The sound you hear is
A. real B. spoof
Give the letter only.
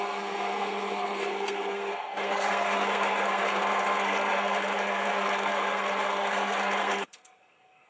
B